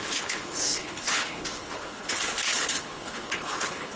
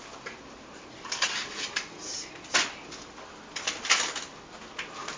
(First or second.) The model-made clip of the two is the first